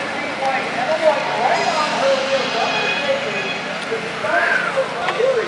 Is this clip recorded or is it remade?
recorded